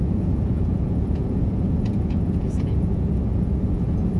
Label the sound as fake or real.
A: fake